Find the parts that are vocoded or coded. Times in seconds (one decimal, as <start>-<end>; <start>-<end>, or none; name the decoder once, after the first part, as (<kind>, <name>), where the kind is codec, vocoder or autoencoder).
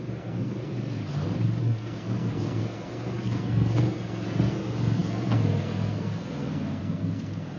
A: 0.0-1.0 (codec, SNAC); 1.6-7.6